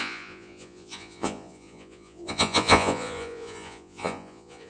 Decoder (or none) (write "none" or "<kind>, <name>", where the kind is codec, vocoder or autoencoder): vocoder, Vocos